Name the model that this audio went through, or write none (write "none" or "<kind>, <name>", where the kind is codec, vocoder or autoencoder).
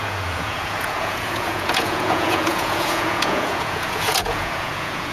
vocoder, Vocos